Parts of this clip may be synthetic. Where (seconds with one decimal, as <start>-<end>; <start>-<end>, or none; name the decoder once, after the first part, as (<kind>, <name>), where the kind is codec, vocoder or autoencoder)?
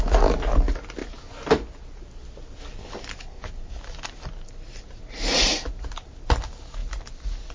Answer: 4.7-6.3 (vocoder, BigVGAN v2)